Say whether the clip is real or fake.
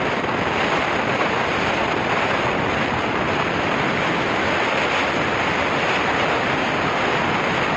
real